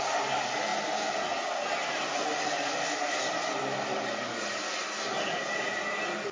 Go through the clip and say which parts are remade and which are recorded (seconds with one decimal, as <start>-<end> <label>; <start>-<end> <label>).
0.0-6.3 recorded

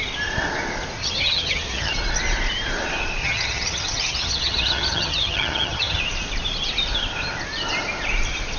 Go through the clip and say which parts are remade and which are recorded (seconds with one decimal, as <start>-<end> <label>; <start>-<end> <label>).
0.0-1.0 recorded; 1.0-1.9 remade; 1.9-3.2 recorded; 3.2-6.0 remade; 6.0-8.6 recorded

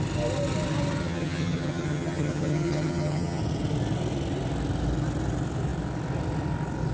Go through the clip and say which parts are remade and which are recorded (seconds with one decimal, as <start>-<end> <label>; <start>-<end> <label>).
0.0-1.0 recorded; 1.0-3.4 remade; 3.4-6.9 recorded

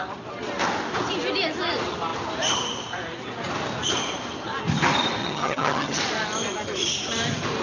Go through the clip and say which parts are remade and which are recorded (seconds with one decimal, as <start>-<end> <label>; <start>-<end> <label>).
0.0-5.2 recorded; 5.2-6.0 remade; 6.0-7.6 recorded

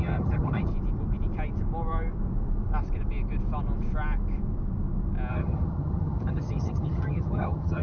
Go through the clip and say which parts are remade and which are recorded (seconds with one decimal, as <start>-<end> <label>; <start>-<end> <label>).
0.0-0.7 remade; 0.7-5.3 recorded; 5.3-7.8 remade

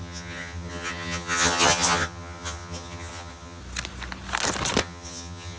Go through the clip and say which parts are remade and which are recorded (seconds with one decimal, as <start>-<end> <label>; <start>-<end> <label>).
0.0-3.6 remade; 3.6-4.8 recorded; 4.8-5.6 remade

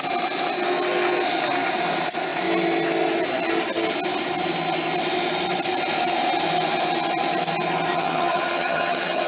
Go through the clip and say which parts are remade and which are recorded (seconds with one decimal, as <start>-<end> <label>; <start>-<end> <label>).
0.0-7.9 recorded; 7.9-9.3 remade

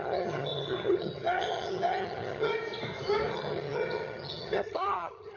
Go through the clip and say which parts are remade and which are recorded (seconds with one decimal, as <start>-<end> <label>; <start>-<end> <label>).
0.0-2.5 remade; 2.5-3.3 recorded; 3.3-5.4 remade